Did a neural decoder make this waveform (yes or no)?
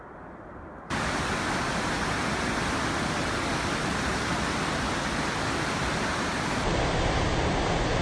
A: no